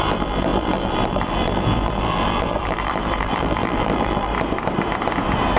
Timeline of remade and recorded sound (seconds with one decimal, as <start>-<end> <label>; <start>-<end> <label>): 0.0-4.3 remade; 4.3-5.6 recorded